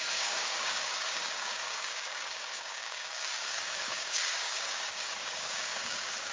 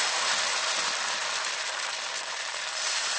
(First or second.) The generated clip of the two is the first